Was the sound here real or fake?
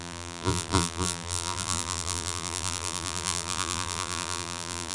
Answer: fake